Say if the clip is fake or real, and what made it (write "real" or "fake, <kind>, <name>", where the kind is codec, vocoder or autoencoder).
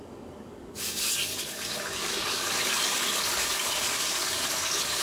fake, codec, DAC